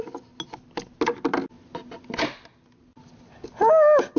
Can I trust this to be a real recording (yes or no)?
yes